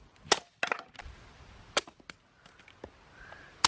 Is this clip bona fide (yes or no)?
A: yes